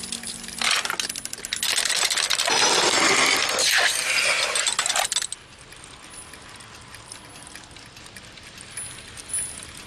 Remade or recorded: recorded